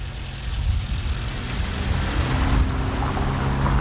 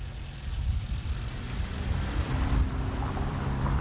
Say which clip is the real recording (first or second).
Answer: first